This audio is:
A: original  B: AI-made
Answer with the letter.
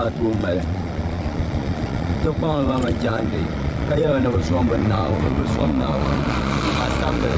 B